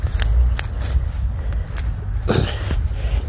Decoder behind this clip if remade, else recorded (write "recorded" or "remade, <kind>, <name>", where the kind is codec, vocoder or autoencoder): recorded